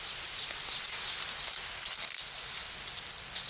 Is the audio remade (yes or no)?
no